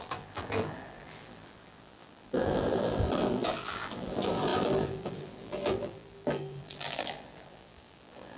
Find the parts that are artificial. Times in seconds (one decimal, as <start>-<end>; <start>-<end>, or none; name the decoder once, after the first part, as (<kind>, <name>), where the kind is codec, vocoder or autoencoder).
0.0-8.4 (vocoder, BigVGAN v2)